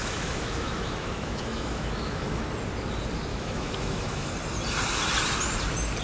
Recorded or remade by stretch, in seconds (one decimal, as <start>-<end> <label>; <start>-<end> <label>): 0.0-2.4 remade; 2.4-3.3 recorded; 3.3-4.3 remade; 4.3-6.0 recorded